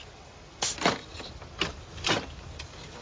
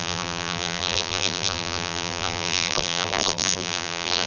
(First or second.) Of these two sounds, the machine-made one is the second